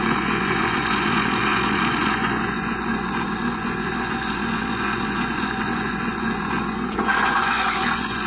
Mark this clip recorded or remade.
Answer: remade